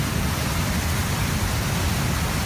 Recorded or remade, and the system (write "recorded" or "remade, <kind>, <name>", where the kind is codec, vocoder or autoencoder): recorded